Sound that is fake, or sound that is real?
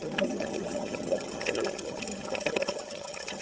fake